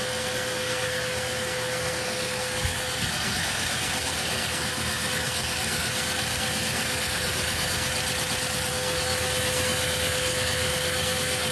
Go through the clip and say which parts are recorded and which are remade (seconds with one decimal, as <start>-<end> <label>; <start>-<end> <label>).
0.0-7.9 remade; 7.9-8.7 recorded; 8.7-11.5 remade